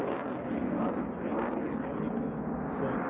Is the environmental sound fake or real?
real